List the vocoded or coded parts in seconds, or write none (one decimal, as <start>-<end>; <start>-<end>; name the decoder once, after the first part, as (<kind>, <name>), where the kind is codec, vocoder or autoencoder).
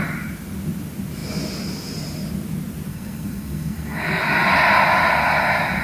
2.9-4.2 (codec, SNAC)